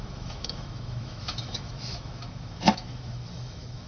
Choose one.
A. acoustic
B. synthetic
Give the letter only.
B